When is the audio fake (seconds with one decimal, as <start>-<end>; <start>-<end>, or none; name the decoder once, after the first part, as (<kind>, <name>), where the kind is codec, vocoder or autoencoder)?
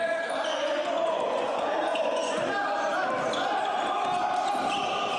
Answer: 0.5-2.5 (vocoder, Vocos)